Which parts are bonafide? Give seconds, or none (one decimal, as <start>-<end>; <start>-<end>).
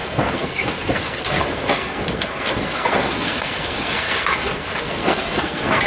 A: none